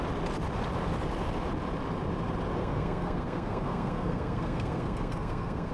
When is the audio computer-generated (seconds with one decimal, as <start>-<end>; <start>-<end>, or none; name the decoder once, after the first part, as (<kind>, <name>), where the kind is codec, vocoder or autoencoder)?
2.6-5.7 (codec, SNAC)